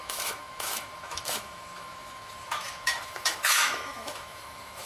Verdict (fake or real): fake